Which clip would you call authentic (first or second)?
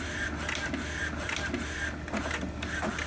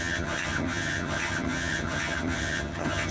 first